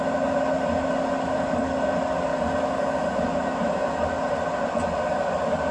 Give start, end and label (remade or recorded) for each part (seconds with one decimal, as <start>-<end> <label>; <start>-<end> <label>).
0.0-5.7 recorded